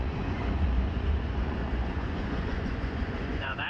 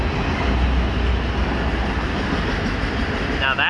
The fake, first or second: first